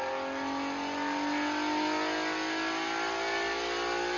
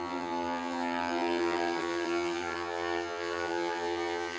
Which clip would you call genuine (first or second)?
first